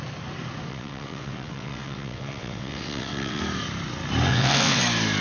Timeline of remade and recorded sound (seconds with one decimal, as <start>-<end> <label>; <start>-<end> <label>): 0.0-0.7 recorded; 0.7-3.4 remade; 3.4-4.3 recorded; 4.3-4.8 remade; 4.8-5.2 recorded